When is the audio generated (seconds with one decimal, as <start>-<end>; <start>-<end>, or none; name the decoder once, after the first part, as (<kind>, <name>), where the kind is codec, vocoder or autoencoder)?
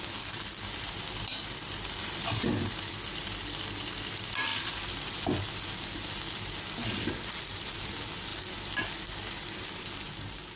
none